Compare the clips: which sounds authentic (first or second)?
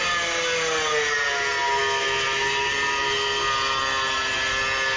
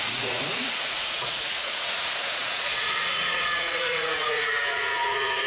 first